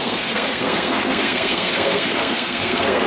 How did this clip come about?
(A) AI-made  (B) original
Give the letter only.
A